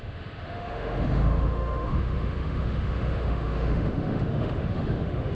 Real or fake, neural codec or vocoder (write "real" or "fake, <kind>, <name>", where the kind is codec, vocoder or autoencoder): fake, autoencoder, DAC-VAE